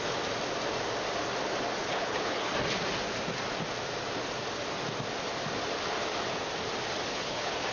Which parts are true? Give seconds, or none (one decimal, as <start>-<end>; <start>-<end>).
0.0-1.8; 2.5-7.1